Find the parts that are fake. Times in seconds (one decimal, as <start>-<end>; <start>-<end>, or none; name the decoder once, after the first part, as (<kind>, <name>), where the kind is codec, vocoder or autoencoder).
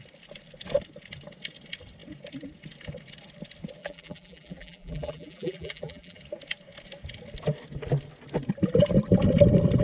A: 3.8-6.2 (vocoder, BigVGAN v2)